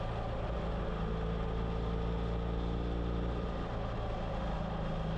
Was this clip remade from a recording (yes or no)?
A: no